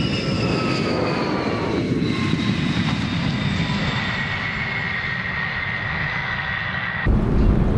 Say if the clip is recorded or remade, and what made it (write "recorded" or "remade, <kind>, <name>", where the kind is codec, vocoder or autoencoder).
recorded